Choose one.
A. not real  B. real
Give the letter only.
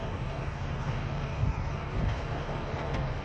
A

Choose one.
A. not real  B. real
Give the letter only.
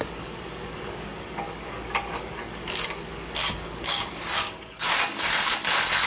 A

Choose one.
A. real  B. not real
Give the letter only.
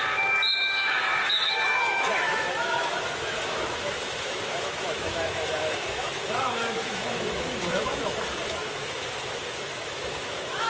B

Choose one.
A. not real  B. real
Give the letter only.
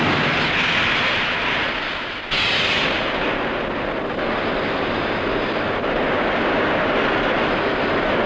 B